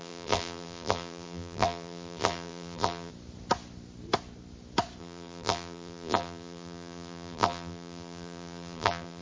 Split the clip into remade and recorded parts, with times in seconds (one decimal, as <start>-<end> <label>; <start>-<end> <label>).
0.0-3.1 remade; 3.1-5.0 recorded; 5.0-9.2 remade